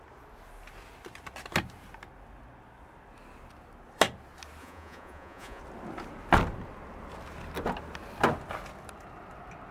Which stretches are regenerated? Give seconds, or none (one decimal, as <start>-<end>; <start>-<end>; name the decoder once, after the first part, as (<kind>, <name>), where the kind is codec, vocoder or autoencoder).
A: 4.6-5.6 (vocoder, Vocos)